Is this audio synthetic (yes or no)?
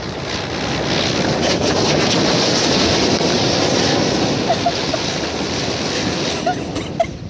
no